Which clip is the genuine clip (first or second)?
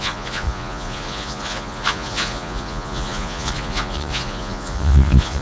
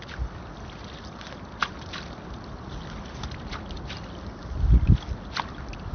second